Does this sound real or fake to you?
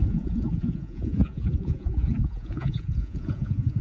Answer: fake